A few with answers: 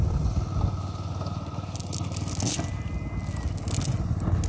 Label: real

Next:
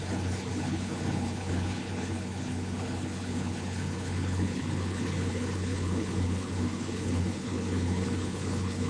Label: fake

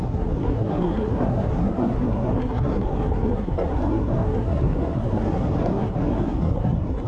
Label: fake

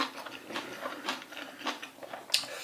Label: real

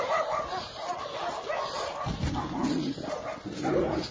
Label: real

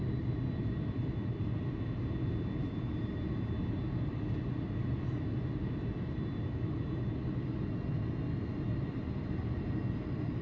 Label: real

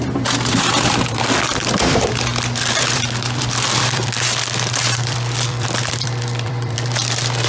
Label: fake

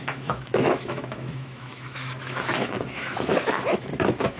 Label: fake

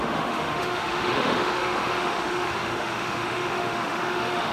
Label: fake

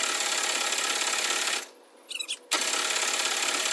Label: real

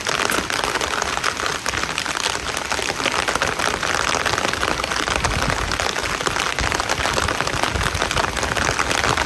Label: real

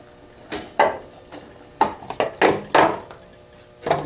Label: real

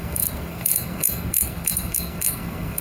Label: fake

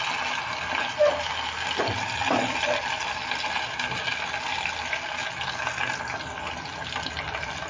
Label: real